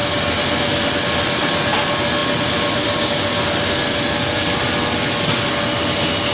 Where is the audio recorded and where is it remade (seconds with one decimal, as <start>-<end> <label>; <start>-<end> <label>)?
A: 0.0-6.3 recorded